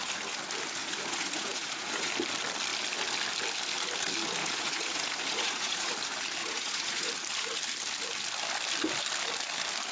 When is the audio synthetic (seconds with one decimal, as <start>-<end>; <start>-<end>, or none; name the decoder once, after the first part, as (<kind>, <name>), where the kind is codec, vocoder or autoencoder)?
0.8-2.1 (vocoder, Vocos); 4.4-5.9; 6.4-7.1